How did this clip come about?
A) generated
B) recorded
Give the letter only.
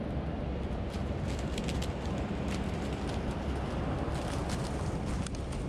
B